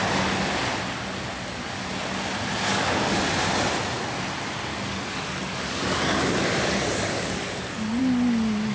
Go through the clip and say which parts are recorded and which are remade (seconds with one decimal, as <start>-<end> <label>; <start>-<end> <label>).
0.0-2.7 recorded; 2.7-3.2 remade; 3.2-4.7 recorded; 4.7-8.0 remade; 8.0-8.7 recorded